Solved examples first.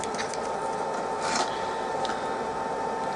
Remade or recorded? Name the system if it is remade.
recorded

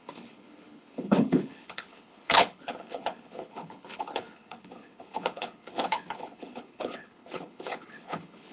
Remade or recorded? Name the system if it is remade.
remade, codec, HILCodec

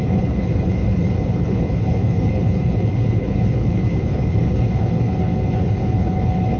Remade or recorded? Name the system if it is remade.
remade, codec, HILCodec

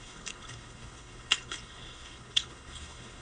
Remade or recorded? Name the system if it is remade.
remade, codec, HILCodec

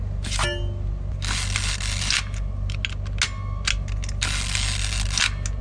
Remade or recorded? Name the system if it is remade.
recorded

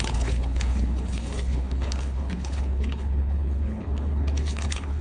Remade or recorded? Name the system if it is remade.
remade, codec, HILCodec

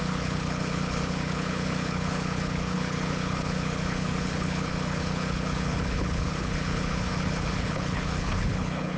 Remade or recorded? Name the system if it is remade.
remade, codec, HILCodec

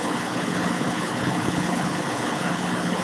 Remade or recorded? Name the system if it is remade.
remade, codec, HILCodec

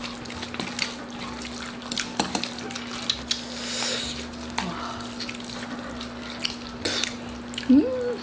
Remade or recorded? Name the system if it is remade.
recorded